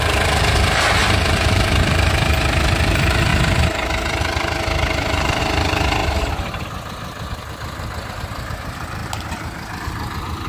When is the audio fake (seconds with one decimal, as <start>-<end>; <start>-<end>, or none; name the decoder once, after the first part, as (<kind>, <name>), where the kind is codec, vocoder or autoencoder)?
0.0-6.0 (vocoder, BigVGAN v2); 8.1-9.0; 9.8-10.5